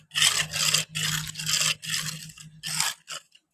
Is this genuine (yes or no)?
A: yes